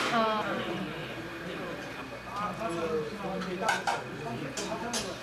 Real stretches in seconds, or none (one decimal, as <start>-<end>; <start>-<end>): 0.0-1.0; 1.9-5.2